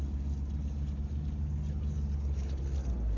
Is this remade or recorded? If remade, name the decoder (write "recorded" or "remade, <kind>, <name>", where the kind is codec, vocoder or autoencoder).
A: recorded